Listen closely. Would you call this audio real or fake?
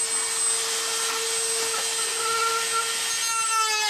real